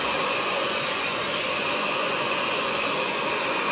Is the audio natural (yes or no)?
no